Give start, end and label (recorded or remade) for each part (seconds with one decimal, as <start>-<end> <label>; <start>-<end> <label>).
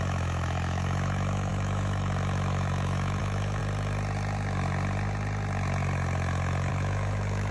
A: 0.0-3.6 remade; 3.6-6.7 recorded; 6.7-7.5 remade